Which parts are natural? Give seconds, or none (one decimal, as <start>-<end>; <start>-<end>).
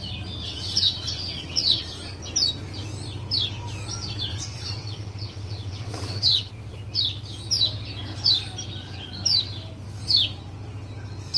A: 0.0-0.4; 1.9-4.3; 6.5-11.4